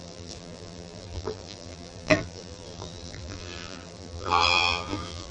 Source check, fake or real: fake